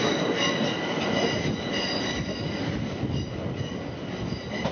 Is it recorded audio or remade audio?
recorded